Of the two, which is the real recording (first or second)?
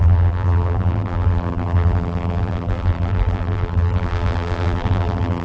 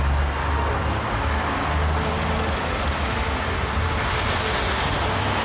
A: second